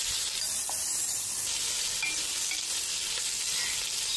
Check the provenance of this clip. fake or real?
real